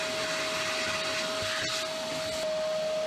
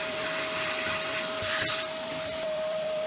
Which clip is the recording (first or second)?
first